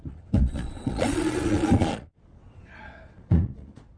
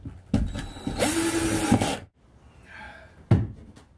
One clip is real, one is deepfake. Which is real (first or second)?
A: second